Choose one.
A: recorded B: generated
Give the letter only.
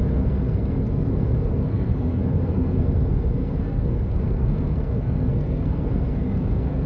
B